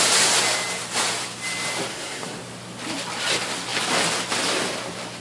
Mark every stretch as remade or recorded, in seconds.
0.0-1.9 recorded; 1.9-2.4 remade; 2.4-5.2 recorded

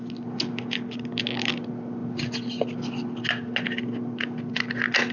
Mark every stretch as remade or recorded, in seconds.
0.0-5.1 recorded

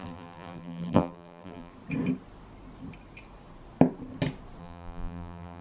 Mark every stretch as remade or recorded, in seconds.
0.0-1.7 remade; 1.7-4.6 recorded; 4.6-5.6 remade

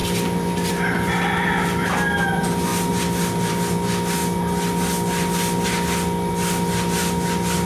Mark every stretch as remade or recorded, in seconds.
0.0-7.7 recorded

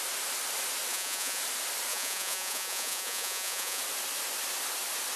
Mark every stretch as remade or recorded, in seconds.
0.0-0.9 recorded; 0.9-1.4 remade; 1.4-1.9 recorded; 1.9-3.8 remade; 3.8-5.2 recorded

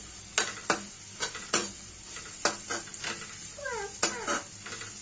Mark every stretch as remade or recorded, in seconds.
0.0-5.0 recorded